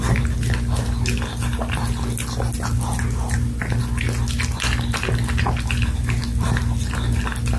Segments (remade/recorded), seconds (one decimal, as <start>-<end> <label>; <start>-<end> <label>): 0.0-7.6 recorded